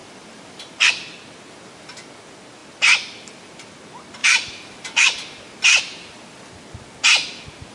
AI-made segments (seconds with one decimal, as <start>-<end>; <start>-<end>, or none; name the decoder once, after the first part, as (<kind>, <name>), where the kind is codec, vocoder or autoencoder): 0.0-0.9 (vocoder, BigVGAN v2); 2.6-3.8; 4.2-5.8